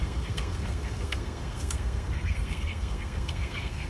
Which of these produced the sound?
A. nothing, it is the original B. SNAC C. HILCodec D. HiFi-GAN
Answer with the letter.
B